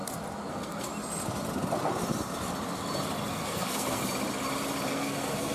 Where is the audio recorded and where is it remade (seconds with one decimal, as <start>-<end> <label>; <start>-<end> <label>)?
0.0-0.5 recorded; 0.5-0.9 remade; 0.9-3.3 recorded; 3.3-4.0 remade; 4.0-4.9 recorded; 4.9-5.5 remade